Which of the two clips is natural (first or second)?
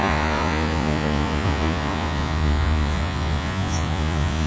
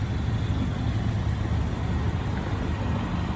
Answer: second